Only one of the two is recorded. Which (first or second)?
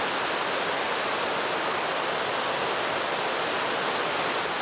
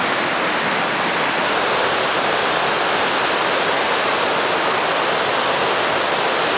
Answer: second